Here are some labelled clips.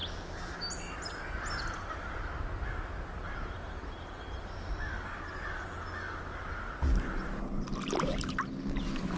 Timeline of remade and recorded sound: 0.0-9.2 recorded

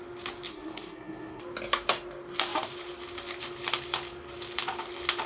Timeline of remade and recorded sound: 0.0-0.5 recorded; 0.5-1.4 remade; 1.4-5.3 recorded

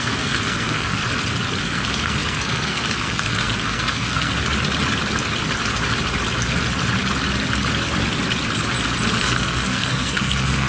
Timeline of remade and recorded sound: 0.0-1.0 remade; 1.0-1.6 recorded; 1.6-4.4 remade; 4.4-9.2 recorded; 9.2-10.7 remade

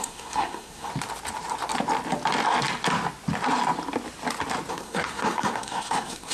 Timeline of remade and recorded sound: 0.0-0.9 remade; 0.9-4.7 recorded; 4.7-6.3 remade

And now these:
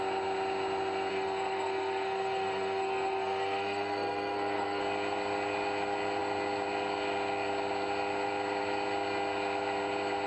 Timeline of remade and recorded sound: 0.0-1.1 recorded; 1.1-4.8 remade; 4.8-10.3 recorded